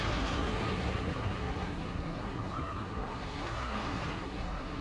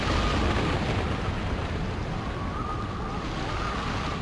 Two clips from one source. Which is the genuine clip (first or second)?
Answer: second